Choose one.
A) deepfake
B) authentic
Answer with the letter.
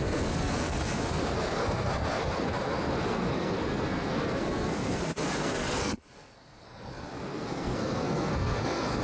A